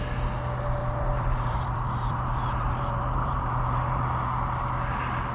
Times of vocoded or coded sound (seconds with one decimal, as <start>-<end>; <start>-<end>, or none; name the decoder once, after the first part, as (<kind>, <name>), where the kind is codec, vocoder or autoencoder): 0.8-4.0 (vocoder, BigVGAN v2)